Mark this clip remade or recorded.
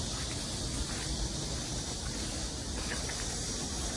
recorded